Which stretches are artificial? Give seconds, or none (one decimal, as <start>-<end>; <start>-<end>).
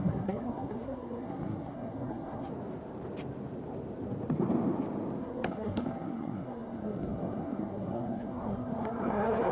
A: 0.0-2.5; 5.2-9.5